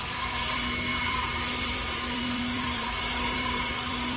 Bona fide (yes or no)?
no